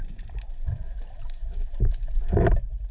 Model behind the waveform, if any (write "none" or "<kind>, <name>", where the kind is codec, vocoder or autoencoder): none